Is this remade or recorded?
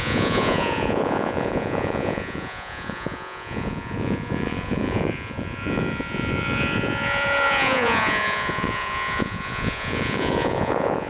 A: remade